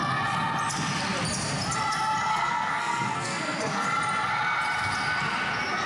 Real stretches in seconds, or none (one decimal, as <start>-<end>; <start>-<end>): 0.0-2.3; 3.6-5.9